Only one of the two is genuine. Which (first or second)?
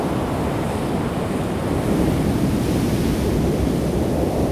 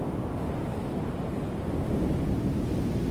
second